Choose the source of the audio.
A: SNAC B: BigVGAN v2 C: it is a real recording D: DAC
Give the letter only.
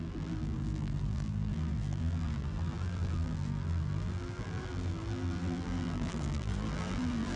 B